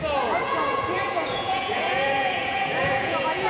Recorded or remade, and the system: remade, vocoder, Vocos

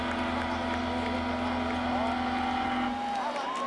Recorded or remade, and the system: recorded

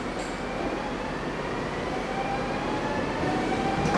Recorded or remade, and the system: recorded